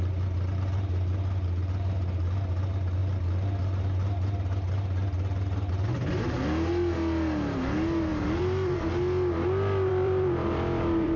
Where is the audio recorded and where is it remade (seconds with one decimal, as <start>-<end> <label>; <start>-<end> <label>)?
0.0-8.1 recorded; 8.1-8.9 remade; 8.9-9.9 recorded; 9.9-11.2 remade